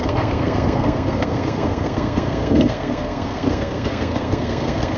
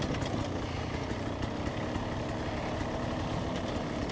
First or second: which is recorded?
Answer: second